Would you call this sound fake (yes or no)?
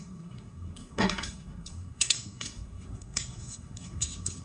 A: yes